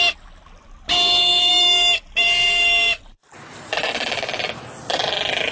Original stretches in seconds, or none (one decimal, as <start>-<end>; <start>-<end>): 0.0-5.5